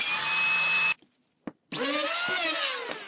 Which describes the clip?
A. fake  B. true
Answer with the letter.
B